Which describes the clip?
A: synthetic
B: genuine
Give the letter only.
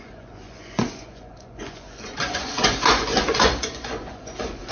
A